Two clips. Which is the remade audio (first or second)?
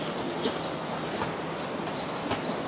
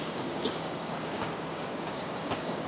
second